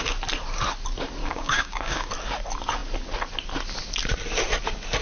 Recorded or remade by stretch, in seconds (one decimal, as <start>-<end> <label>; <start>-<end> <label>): 0.0-1.2 recorded; 1.2-2.1 remade; 2.1-5.0 recorded